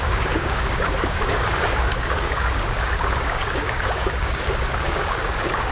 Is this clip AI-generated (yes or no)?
yes